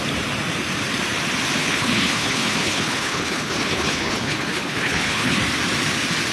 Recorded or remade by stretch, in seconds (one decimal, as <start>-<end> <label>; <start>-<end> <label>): 0.0-1.6 recorded; 1.6-5.4 remade; 5.4-6.3 recorded